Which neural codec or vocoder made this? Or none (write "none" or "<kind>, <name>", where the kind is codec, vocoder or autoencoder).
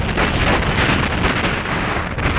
none